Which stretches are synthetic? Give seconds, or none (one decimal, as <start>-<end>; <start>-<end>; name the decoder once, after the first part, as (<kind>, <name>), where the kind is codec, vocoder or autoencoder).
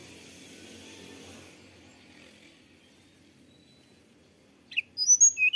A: none